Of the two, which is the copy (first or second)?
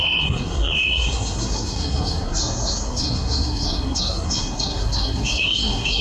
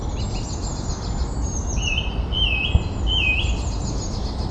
first